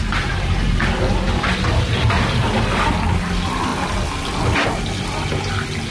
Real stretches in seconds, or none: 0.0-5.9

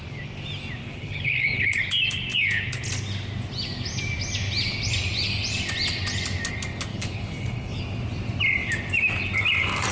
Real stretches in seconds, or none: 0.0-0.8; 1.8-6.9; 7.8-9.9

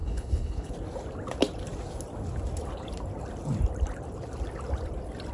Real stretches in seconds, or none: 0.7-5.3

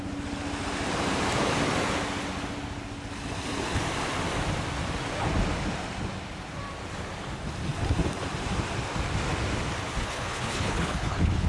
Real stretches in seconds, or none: 0.0-10.0

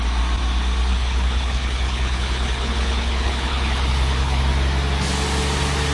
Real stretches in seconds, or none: 0.0-0.9; 4.4-5.9

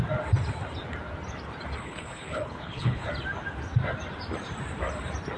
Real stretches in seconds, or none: 0.0-1.8; 3.1-5.4